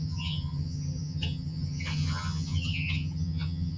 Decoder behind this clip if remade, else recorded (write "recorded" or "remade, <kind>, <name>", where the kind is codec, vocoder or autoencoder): remade, vocoder, HiFi-GAN